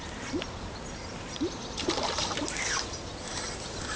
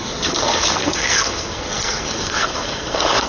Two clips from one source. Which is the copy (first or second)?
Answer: second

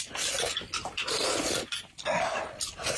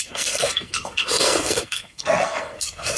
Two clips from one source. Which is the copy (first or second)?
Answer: second